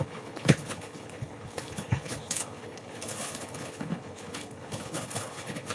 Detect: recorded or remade remade